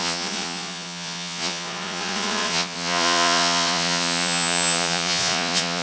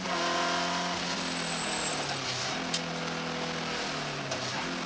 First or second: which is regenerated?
first